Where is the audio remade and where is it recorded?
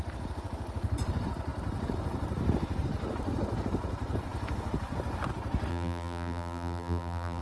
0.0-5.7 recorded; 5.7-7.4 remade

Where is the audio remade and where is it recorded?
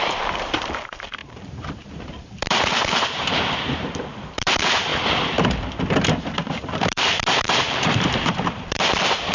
0.0-4.9 remade; 4.9-6.2 recorded; 6.2-9.3 remade